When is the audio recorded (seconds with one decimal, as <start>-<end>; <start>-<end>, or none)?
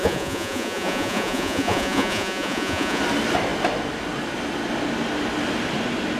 3.0-6.2